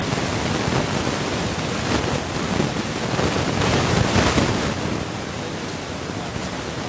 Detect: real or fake real